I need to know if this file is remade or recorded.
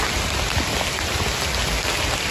recorded